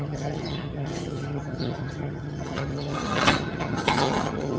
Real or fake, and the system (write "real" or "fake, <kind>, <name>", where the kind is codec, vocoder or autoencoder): fake, vocoder, HiFi-GAN